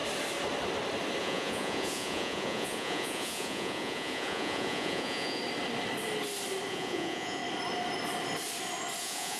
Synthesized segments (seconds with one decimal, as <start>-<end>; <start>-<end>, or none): 1.2-5.4; 6.7-7.4; 9.0-9.4